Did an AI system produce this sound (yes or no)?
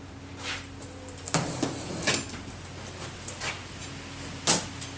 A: no